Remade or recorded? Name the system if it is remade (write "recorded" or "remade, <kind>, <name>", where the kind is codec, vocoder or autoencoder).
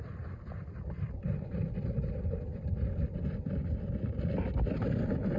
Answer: recorded